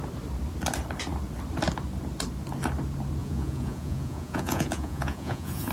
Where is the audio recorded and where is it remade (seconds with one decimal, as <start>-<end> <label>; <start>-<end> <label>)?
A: 0.0-3.2 recorded; 3.2-5.7 remade